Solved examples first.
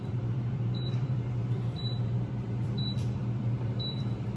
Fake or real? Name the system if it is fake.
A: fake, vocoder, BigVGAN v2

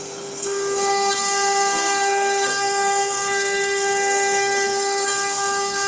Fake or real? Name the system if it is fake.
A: fake, codec, SNAC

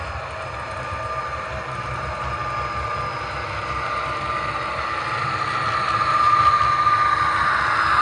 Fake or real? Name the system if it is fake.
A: real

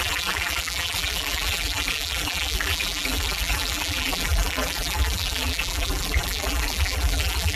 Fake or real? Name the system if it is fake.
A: fake, vocoder, BigVGAN v2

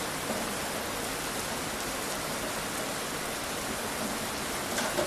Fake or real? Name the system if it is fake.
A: real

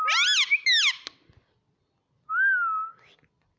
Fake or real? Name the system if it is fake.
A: real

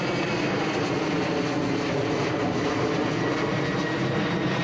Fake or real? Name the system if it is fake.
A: real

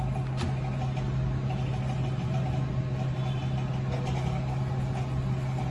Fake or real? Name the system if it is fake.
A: real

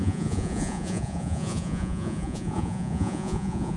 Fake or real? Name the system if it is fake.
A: fake, vocoder, Vocos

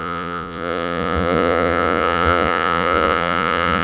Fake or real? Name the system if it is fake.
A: fake, vocoder, Vocos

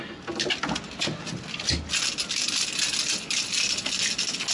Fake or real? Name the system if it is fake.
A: real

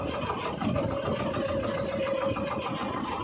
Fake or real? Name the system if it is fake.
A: real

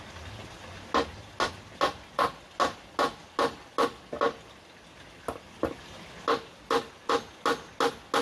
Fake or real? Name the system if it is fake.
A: real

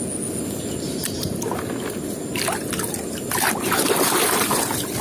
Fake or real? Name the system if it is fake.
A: real